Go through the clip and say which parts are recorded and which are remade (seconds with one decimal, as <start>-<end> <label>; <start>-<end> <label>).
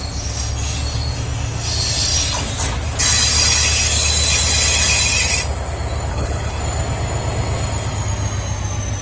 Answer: 0.0-6.1 recorded; 6.1-6.6 remade; 6.6-9.0 recorded